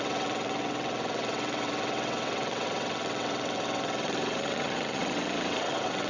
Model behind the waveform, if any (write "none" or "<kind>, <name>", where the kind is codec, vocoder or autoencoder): vocoder, WaveNeXt